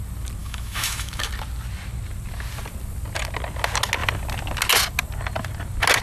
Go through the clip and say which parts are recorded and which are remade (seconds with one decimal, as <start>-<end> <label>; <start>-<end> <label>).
0.0-0.4 recorded; 0.4-1.3 remade; 1.3-6.0 recorded